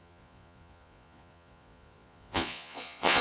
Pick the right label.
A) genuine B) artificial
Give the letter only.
B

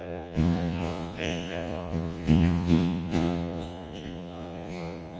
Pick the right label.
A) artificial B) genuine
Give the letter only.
A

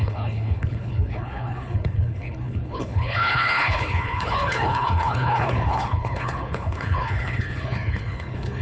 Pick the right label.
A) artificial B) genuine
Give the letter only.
A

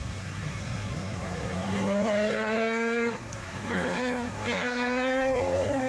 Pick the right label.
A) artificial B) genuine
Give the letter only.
A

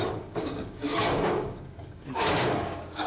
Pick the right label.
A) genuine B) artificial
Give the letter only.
B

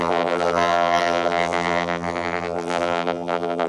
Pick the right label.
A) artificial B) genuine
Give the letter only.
A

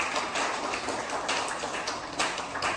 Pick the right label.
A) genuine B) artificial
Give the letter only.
A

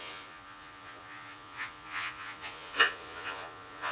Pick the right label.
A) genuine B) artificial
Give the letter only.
B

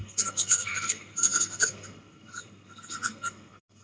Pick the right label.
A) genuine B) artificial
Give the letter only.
B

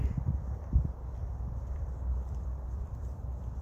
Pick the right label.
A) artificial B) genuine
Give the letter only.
A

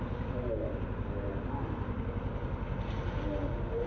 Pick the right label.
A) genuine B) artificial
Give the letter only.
A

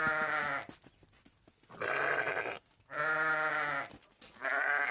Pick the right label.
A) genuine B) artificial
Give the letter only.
A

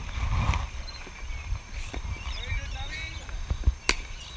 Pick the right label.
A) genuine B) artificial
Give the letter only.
A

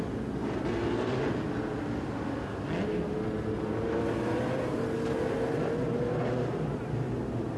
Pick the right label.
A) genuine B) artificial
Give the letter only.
A